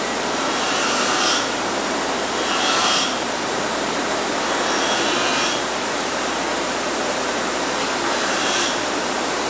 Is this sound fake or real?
fake